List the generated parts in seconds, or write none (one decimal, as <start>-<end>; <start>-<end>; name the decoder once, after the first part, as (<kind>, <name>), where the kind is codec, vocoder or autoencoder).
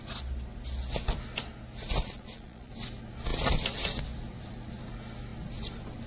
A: 2.0-2.7 (vocoder, Vocos)